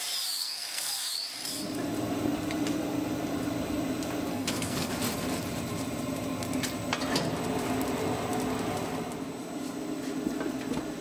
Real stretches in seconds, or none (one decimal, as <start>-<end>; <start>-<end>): 0.0-0.4; 1.1-4.3; 4.9-11.0